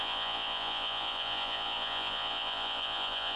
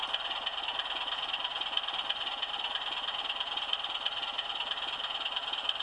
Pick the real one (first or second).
second